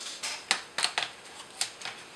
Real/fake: real